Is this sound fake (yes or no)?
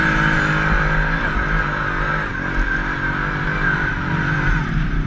no